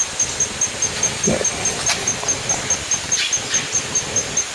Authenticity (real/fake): real